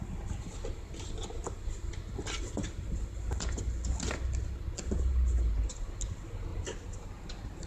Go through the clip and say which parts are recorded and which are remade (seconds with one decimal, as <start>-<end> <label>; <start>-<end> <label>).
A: 0.0-6.5 recorded; 6.5-7.3 remade; 7.3-7.7 recorded